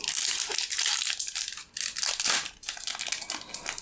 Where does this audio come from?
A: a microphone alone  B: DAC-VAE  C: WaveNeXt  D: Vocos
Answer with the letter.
A